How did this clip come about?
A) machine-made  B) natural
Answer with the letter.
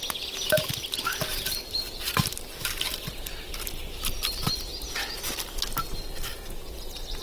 B